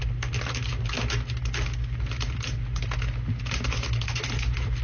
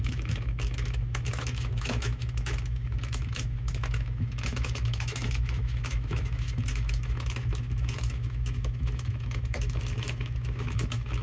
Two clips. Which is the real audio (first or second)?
first